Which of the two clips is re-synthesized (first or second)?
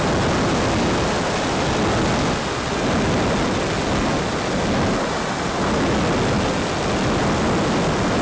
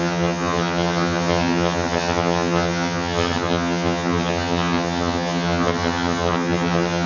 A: second